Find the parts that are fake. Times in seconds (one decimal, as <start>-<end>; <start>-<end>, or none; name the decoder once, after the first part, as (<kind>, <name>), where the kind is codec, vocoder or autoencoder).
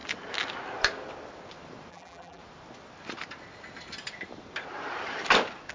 1.9-2.4 (vocoder, BigVGAN v2)